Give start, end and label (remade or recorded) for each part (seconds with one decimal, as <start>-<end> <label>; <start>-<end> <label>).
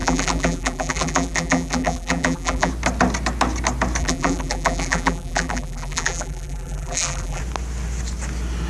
0.0-2.7 remade; 2.7-4.0 recorded; 4.0-7.4 remade; 7.4-8.7 recorded